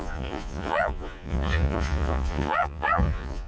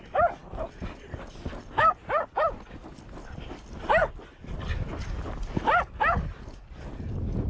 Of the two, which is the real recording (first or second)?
second